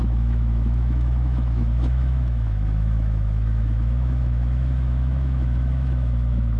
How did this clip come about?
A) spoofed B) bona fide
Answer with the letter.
A